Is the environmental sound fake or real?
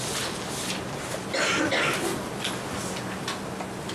real